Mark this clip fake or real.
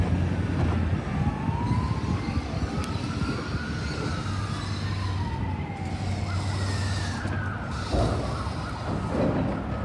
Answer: real